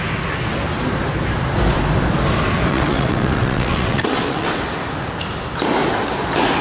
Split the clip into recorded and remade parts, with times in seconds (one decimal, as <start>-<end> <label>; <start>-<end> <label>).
0.0-2.7 recorded; 2.7-4.6 remade; 4.6-6.6 recorded